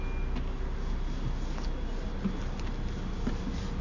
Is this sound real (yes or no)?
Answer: yes